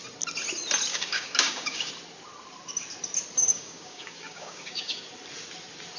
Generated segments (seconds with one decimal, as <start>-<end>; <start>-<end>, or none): 0.9-1.9; 3.4-5.0